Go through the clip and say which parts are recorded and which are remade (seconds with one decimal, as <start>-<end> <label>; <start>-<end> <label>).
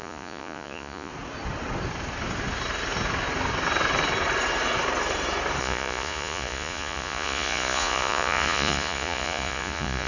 0.0-1.1 remade; 1.1-5.6 recorded; 5.6-10.1 remade